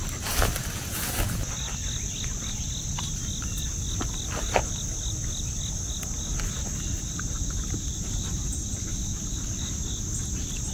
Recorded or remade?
recorded